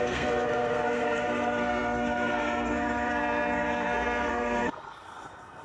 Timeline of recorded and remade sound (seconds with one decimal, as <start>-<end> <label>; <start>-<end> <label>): 0.0-5.6 remade